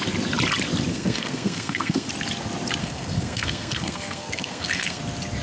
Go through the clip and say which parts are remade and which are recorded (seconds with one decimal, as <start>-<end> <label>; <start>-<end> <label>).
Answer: 0.0-0.9 recorded; 0.9-2.1 remade; 2.1-2.8 recorded; 2.8-5.0 remade; 5.0-5.4 recorded